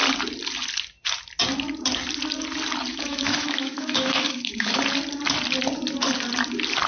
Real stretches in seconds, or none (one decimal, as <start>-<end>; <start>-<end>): 0.0-2.9; 4.8-6.9